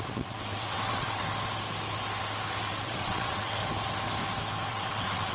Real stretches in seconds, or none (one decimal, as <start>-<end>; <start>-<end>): 1.2-2.6; 3.6-4.7